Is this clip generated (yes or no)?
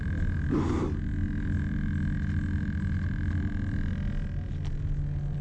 no